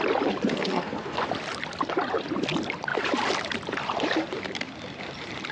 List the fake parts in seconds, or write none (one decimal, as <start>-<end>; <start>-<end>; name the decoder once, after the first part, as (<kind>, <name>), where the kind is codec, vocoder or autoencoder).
0.5-1.2 (codec, SNAC)